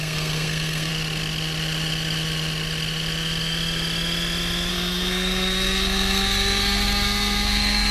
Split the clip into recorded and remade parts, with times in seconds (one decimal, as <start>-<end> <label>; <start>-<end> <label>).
0.0-0.9 remade; 0.9-4.7 recorded; 4.7-7.9 remade